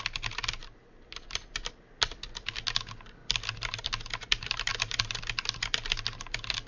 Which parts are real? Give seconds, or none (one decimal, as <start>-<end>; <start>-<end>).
0.0-6.7